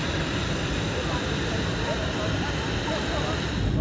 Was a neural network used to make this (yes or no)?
no